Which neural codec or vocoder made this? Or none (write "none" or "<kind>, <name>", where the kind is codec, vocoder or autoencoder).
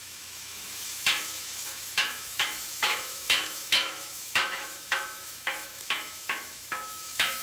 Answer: autoencoder, DAC-VAE